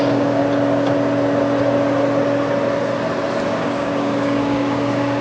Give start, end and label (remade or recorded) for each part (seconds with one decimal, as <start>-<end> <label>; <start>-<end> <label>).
0.0-0.4 remade; 0.4-3.5 recorded; 3.5-5.2 remade